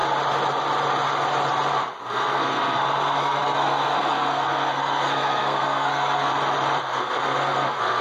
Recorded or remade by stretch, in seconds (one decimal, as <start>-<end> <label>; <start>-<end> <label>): 0.0-2.0 recorded; 2.0-6.3 remade; 6.3-6.8 recorded; 6.8-8.0 remade